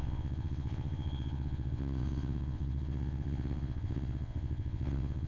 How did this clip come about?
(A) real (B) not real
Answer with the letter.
B